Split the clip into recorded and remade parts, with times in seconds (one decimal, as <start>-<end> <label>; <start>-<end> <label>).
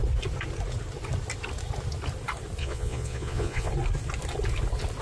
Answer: 0.0-2.6 recorded; 2.6-3.7 remade; 3.7-5.0 recorded